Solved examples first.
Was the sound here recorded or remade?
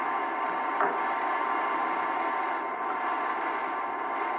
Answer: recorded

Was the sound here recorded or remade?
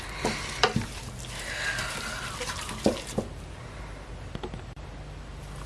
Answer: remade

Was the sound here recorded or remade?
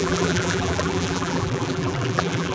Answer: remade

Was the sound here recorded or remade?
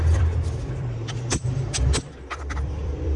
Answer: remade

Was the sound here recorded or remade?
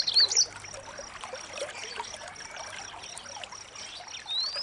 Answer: recorded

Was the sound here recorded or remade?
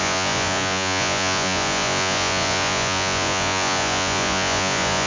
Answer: remade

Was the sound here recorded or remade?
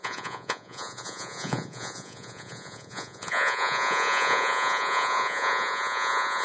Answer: remade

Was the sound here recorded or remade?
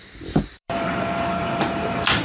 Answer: remade